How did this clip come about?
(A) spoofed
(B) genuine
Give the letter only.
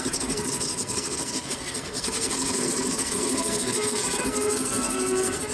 A